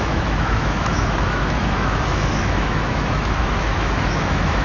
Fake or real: fake